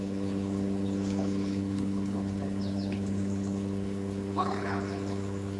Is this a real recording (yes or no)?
no